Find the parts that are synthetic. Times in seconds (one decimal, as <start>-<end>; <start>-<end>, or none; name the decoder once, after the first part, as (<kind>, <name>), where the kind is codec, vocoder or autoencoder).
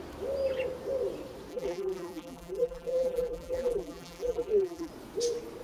1.5-4.9 (vocoder, BigVGAN v2)